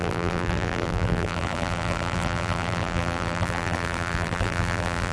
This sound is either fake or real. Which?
fake